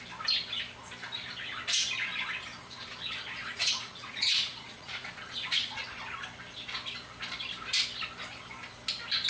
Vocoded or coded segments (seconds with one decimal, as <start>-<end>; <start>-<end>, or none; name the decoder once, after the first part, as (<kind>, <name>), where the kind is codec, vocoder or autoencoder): 3.4-5.8 (vocoder, Vocos)